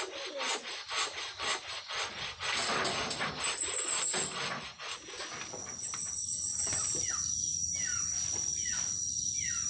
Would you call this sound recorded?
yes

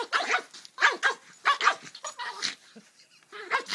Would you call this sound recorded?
yes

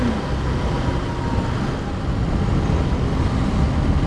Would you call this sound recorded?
yes